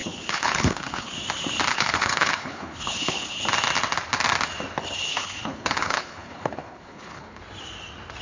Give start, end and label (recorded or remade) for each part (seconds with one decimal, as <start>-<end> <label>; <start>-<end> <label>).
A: 0.0-1.1 remade; 1.1-1.7 recorded; 1.7-3.4 remade; 3.4-5.1 recorded; 5.1-7.4 remade; 7.4-8.2 recorded